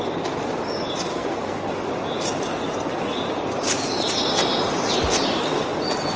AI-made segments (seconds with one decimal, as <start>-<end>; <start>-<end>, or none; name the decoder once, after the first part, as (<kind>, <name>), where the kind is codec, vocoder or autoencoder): 1.1-1.7 (codec, SNAC)